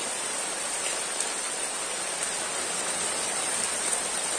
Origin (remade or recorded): remade